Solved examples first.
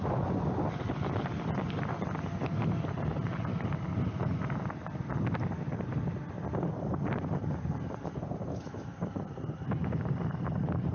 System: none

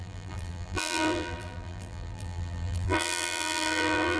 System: vocoder, BigVGAN v2